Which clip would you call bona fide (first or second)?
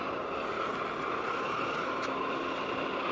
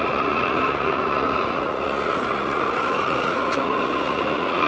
first